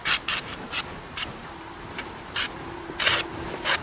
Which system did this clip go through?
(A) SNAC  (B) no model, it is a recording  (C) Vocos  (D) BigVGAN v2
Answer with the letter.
D